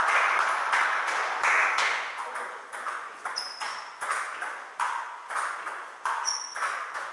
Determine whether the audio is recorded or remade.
remade